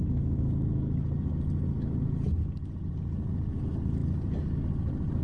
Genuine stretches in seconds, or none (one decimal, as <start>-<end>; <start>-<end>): 0.0-4.0; 4.6-5.2